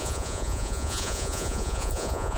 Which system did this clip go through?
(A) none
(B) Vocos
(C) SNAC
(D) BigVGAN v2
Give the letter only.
B